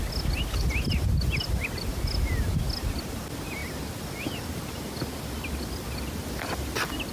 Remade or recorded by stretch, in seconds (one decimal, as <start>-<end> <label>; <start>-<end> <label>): 0.0-7.1 recorded